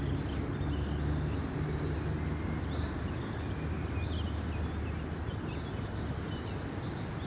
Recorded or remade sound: recorded